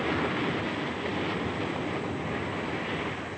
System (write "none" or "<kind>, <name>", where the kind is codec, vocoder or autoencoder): none